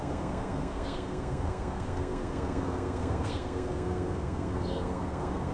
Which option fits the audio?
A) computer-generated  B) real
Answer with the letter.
A